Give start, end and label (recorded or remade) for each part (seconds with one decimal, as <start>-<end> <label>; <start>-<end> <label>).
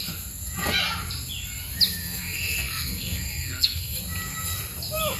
0.0-2.0 recorded; 2.0-4.0 remade; 4.0-5.2 recorded